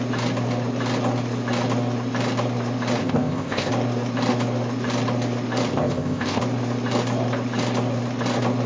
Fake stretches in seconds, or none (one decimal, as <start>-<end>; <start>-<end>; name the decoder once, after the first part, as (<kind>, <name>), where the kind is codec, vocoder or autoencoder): 3.0-3.7 (codec, ZipCodec); 5.7-6.4